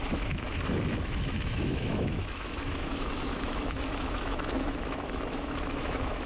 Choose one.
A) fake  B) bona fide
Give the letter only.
A